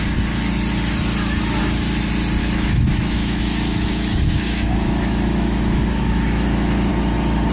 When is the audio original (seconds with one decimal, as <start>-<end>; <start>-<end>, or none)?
0.0-2.4; 6.9-7.5

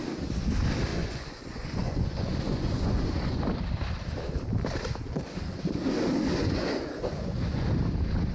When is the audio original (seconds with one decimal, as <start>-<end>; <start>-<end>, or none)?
0.0-0.9; 3.4-6.4; 7.7-8.3

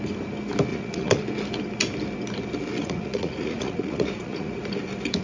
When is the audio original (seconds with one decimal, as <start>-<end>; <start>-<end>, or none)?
0.0-0.7; 1.2-2.8; 4.6-5.2

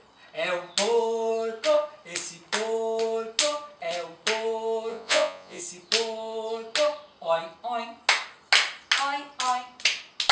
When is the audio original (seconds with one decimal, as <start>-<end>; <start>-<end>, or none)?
0.0-4.9; 5.6-10.3

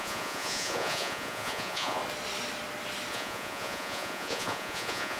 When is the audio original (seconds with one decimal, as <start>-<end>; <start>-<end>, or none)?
2.0-3.1

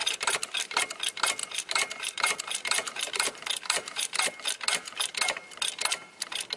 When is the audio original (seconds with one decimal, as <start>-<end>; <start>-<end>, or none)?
0.8-1.4; 4.3-6.6